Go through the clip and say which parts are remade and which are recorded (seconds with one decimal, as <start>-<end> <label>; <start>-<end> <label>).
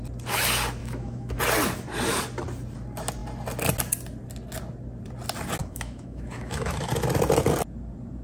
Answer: 0.0-0.8 recorded; 0.8-1.4 remade; 1.4-5.6 recorded; 5.6-6.9 remade; 6.9-8.2 recorded